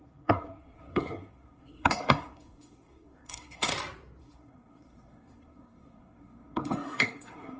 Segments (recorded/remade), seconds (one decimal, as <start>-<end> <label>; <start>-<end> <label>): 0.0-3.7 remade; 3.7-4.2 recorded; 4.2-7.6 remade